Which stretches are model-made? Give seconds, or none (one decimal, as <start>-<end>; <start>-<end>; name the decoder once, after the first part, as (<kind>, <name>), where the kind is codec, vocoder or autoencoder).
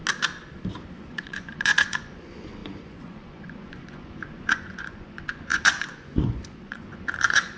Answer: 1.0-7.6 (vocoder, Vocos)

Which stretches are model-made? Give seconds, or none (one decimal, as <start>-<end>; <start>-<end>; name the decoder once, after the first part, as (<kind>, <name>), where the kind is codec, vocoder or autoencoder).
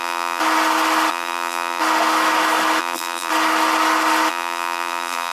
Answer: 0.0-0.4 (vocoder, BigVGAN v2); 1.1-1.8; 2.8-3.3; 4.3-5.3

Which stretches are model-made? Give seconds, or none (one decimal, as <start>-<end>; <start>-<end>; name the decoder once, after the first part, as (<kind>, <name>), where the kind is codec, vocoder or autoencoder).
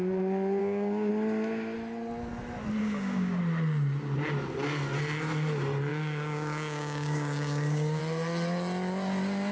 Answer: 0.6-1.1 (codec, DAC); 2.8-3.4; 5.9-8.0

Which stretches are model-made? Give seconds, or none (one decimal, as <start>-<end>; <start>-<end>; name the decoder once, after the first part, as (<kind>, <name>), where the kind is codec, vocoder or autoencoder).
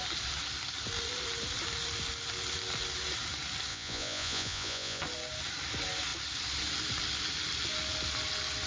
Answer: 3.7-5.0 (vocoder, Vocos)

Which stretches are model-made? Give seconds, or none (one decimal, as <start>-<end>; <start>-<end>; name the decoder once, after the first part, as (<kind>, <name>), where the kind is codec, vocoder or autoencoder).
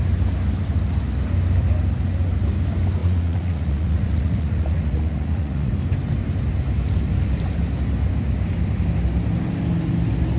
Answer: 3.0-5.7 (vocoder, Vocos)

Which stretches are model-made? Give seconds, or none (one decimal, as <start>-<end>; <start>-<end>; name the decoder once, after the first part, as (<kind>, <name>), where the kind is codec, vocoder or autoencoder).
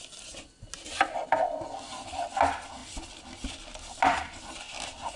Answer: none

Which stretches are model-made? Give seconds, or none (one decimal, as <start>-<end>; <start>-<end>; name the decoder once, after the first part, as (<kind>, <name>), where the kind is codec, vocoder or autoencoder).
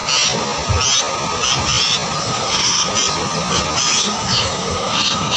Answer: 2.2-2.9 (codec, SNAC); 4.0-5.4